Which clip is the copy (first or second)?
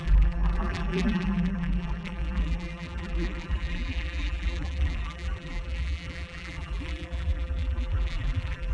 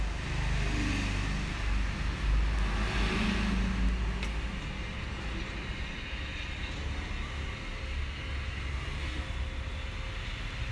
first